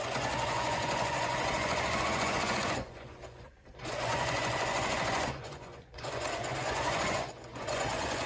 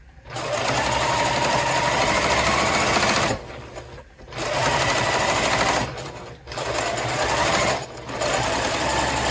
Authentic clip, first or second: second